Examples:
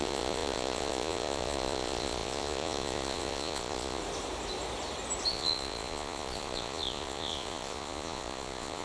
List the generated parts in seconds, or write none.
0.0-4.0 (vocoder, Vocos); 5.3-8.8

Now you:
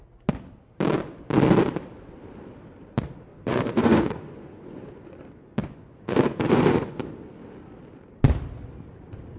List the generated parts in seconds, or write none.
3.3-7.0 (vocoder, Vocos)

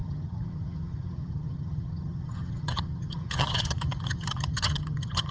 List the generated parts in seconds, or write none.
0.0-5.3 (vocoder, HiFi-GAN)